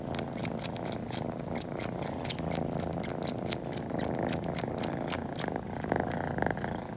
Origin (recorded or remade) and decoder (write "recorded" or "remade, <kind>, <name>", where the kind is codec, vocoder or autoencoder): recorded